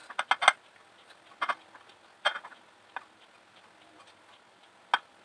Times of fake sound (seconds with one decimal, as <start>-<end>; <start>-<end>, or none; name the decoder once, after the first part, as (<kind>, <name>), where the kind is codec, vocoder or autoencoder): none